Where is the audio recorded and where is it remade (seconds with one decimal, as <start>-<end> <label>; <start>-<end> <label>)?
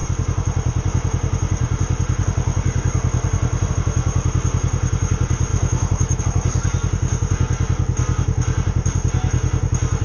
0.0-5.5 recorded; 5.5-6.2 remade; 6.2-10.0 recorded